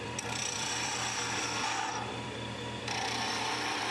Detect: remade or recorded remade